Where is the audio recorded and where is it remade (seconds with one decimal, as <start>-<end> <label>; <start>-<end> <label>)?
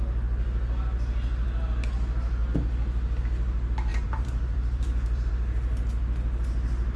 0.0-3.9 recorded; 3.9-5.3 remade; 5.3-7.0 recorded